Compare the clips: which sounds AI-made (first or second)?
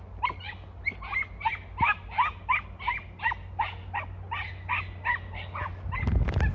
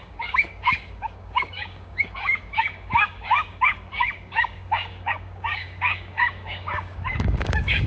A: second